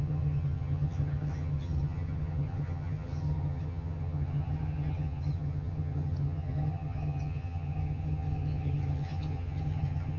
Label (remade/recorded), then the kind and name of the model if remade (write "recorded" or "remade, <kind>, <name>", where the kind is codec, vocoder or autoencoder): remade, vocoder, HiFi-GAN